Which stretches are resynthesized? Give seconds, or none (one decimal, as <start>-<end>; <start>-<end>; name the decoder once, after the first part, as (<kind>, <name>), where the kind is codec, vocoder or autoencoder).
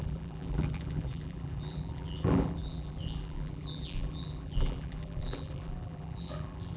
0.0-6.8 (vocoder, BigVGAN v2)